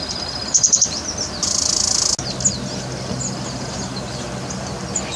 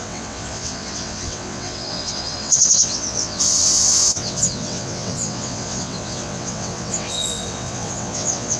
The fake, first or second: second